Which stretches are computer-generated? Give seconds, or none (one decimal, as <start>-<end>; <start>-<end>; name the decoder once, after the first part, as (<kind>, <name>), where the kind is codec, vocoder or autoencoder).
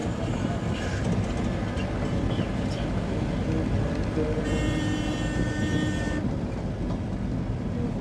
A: none